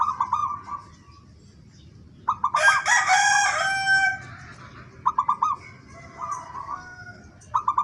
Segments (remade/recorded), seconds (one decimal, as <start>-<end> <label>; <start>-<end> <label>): 0.0-6.6 recorded; 6.6-7.2 remade; 7.2-7.8 recorded